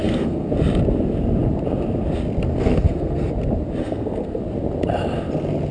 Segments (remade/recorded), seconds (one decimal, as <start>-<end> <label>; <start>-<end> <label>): 0.0-0.5 remade; 0.5-2.5 recorded; 2.5-3.3 remade; 3.3-3.8 recorded; 3.8-4.4 remade; 4.4-5.7 recorded